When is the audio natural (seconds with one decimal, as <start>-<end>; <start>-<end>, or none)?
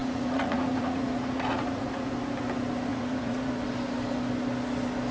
2.1-2.9; 3.5-5.1